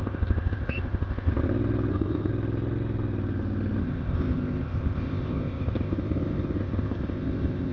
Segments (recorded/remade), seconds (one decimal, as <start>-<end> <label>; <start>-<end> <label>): 0.0-1.3 remade; 1.3-1.9 recorded; 1.9-2.3 remade; 2.3-3.8 recorded; 3.8-7.7 remade